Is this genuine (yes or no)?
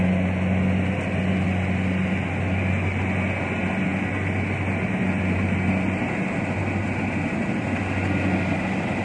yes